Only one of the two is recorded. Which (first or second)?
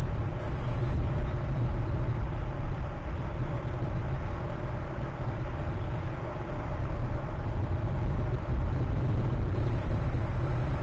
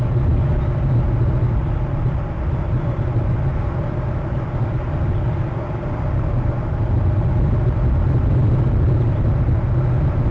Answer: second